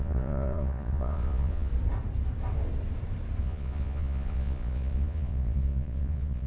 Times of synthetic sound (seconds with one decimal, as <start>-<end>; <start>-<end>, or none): 0.0-1.7; 3.4-6.5